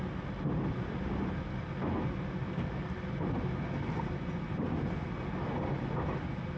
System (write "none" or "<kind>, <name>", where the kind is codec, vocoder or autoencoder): none